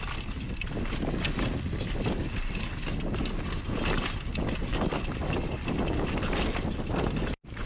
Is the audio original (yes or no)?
yes